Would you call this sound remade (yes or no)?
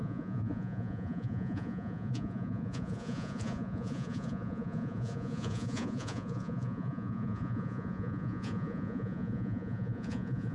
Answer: yes